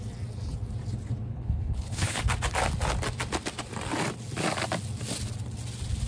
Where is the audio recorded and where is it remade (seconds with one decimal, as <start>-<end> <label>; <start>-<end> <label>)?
0.0-1.3 recorded; 1.3-2.2 remade; 2.2-6.1 recorded